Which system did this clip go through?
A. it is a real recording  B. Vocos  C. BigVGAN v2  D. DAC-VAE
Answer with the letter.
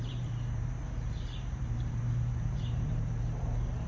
C